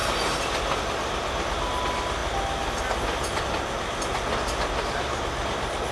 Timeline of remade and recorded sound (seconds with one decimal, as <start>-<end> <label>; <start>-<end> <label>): 0.0-5.9 recorded